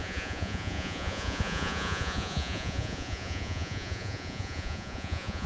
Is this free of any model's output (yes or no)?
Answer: no